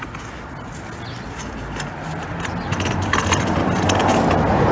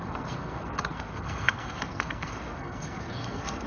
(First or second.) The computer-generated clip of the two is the second